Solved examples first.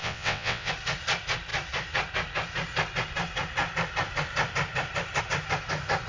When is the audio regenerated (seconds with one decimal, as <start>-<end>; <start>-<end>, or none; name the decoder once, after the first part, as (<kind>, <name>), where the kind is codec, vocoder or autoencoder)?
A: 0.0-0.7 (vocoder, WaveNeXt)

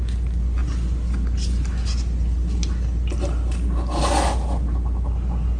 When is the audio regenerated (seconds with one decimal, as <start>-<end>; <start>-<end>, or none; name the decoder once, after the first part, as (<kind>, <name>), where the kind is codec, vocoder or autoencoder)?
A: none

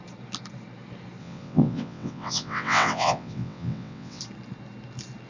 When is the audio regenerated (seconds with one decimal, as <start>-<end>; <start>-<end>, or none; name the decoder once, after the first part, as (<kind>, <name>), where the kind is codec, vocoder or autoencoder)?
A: 1.2-4.2 (vocoder, WaveNeXt)

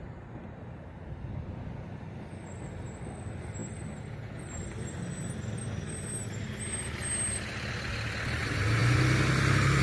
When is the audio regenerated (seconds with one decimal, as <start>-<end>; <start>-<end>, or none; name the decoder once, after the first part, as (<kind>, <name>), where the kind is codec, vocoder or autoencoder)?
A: none

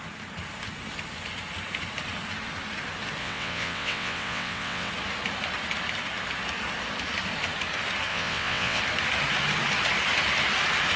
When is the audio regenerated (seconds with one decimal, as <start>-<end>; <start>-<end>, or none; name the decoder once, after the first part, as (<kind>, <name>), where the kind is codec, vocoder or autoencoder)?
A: 3.2-4.9 (vocoder, WaveNeXt); 8.1-8.8

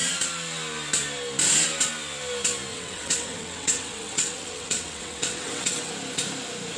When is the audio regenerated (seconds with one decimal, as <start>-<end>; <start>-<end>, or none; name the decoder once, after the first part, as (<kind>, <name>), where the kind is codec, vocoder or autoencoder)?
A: 2.7-5.9 (vocoder, WaveNeXt)